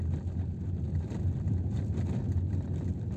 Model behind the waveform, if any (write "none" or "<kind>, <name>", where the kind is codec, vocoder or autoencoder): none